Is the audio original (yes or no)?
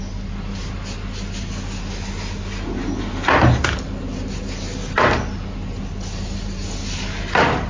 yes